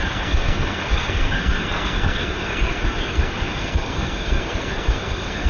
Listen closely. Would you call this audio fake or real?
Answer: fake